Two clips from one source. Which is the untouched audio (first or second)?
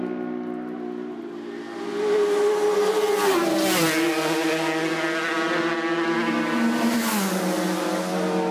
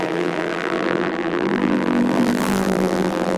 first